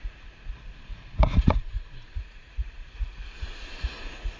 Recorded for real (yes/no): no